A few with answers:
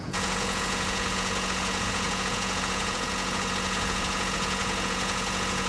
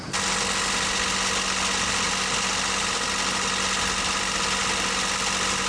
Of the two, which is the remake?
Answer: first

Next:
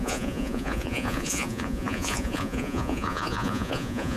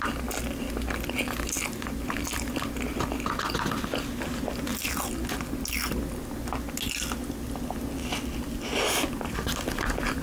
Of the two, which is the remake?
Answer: first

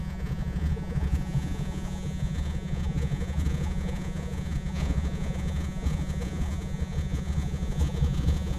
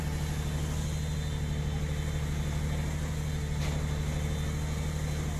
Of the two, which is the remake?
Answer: first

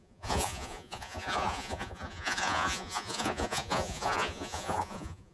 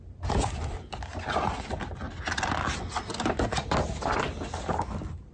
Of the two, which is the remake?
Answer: first